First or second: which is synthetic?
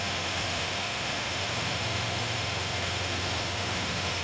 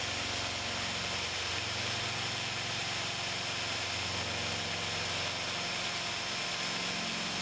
first